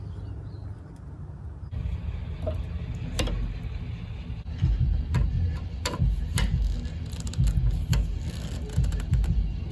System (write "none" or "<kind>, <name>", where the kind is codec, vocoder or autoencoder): none